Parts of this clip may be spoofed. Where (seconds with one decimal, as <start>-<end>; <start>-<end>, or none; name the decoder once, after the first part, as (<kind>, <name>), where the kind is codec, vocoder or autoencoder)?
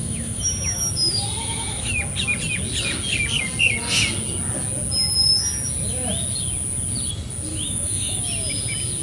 0.0-0.8 (autoencoder, DAC-VAE); 1.4-1.9; 7.5-8.2